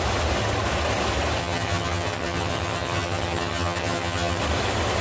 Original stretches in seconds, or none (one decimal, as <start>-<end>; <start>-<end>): 0.0-1.4; 4.4-5.0